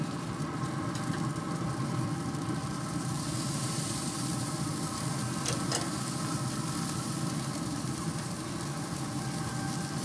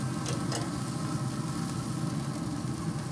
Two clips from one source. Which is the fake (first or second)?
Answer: first